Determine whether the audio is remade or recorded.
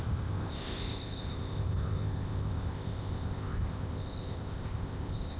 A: remade